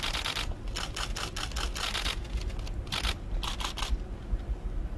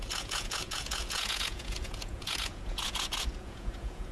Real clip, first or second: first